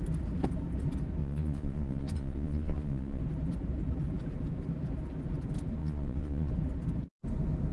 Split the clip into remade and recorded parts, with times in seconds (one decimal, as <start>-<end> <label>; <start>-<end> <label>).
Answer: 0.0-1.2 recorded; 1.2-3.2 remade; 3.2-5.8 recorded; 5.8-6.5 remade; 6.5-7.7 recorded